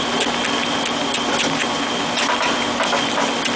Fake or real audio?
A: real